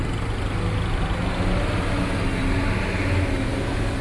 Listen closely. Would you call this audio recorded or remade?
recorded